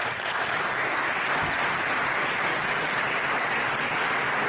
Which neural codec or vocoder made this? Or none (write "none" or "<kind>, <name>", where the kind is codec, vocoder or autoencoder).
none